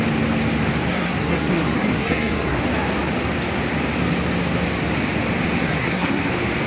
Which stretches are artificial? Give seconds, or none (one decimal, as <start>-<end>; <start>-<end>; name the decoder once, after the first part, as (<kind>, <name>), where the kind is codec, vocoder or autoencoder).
0.9-2.6 (codec, SNAC); 5.6-6.3